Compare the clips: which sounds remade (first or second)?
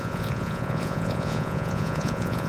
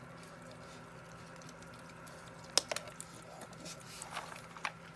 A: first